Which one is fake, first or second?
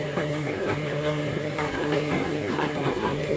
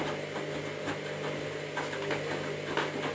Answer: first